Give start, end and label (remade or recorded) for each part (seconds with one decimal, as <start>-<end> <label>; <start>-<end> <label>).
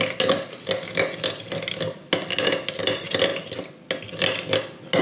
0.0-5.0 recorded